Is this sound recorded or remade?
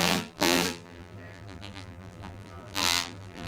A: remade